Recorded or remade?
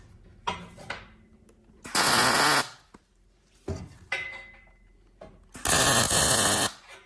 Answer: recorded